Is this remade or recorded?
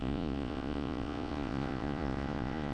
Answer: remade